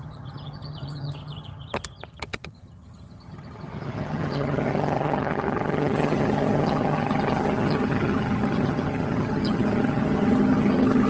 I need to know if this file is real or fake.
fake